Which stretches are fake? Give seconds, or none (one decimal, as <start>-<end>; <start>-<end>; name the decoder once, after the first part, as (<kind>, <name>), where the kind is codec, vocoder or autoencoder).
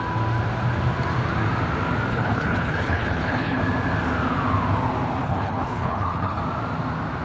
2.1-3.6 (codec, HILCodec); 5.2-6.4